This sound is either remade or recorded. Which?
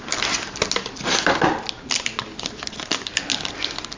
recorded